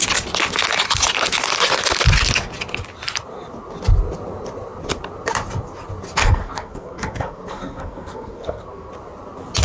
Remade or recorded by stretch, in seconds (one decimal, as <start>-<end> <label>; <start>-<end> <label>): 0.0-6.2 recorded; 6.2-8.9 remade; 8.9-9.6 recorded